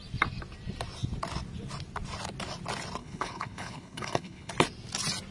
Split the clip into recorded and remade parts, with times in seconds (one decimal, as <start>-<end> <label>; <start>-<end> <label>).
0.0-3.0 recorded; 3.0-4.5 remade; 4.5-5.3 recorded